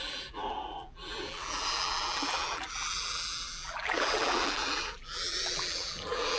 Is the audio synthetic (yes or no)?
yes